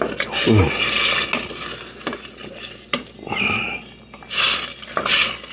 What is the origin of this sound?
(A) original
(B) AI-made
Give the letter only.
A